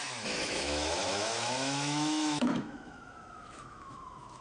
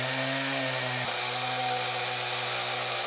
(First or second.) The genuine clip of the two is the second